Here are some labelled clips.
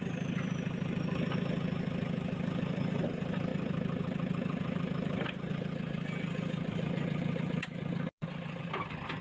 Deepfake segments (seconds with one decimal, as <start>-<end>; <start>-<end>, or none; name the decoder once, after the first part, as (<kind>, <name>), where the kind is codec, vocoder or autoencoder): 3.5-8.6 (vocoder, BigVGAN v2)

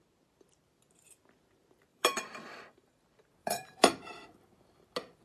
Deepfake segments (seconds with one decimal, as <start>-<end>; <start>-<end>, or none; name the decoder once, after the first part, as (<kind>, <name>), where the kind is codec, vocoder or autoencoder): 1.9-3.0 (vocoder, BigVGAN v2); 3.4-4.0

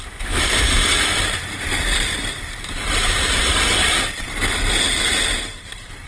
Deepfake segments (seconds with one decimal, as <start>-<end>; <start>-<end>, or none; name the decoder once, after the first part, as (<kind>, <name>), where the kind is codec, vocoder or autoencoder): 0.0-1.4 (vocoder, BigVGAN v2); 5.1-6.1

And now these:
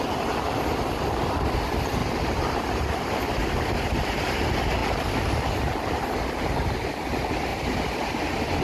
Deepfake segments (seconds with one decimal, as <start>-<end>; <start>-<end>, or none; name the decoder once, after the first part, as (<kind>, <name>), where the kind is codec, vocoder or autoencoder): 2.0-3.2 (vocoder, BigVGAN v2); 7.5-8.2